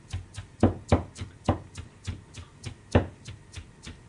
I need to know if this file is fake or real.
real